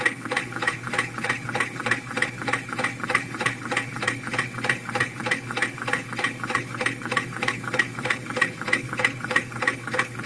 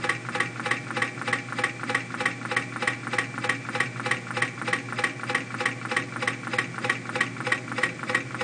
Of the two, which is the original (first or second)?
second